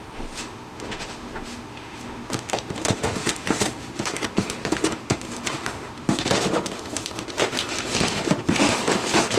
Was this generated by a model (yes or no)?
yes